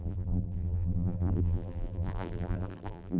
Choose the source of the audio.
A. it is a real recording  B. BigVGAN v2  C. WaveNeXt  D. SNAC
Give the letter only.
B